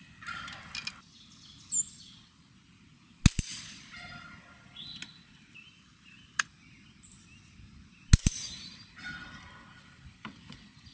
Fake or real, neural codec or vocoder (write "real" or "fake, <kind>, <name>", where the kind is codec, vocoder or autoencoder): real